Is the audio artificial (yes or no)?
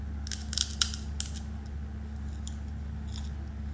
no